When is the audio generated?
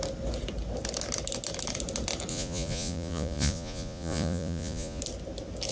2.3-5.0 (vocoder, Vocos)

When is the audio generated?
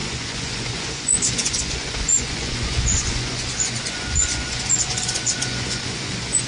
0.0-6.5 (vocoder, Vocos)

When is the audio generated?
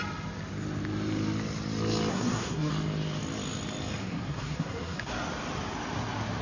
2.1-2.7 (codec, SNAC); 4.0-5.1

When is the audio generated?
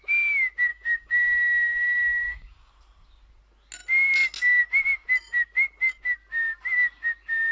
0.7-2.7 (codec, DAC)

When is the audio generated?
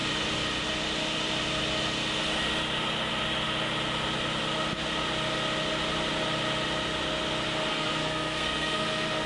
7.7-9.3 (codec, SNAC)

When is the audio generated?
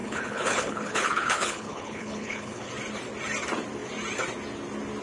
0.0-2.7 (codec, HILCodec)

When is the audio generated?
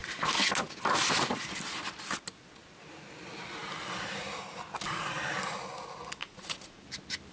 6.2-6.8 (vocoder, Vocos)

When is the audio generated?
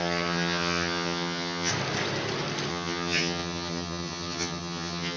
0.0-1.7 (vocoder, HiFi-GAN); 2.7-5.2